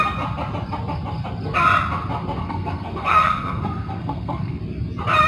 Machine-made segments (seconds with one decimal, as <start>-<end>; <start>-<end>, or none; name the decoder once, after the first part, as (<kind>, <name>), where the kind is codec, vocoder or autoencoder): 2.4-4.6 (codec, SNAC)